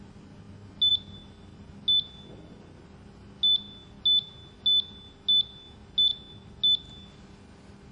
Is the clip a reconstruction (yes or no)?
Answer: no